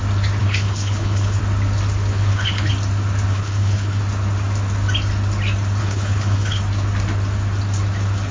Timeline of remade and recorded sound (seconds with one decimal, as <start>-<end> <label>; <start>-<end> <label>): 0.0-0.4 recorded; 0.4-1.4 remade; 1.4-2.1 recorded; 2.1-2.7 remade; 2.7-3.3 recorded; 3.3-4.0 remade; 4.0-5.8 recorded; 5.8-6.6 remade; 6.6-8.3 recorded